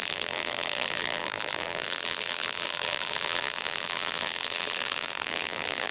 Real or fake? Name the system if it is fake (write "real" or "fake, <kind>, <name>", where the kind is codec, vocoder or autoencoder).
fake, vocoder, BigVGAN v2